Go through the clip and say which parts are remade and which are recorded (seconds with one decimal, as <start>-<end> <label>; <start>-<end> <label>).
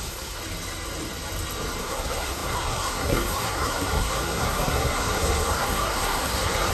0.0-0.4 remade; 0.4-1.8 recorded; 1.8-6.7 remade